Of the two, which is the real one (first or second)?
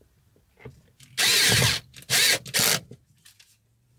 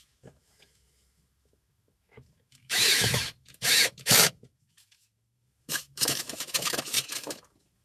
first